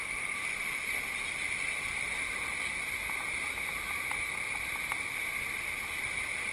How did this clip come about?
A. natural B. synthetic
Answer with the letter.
A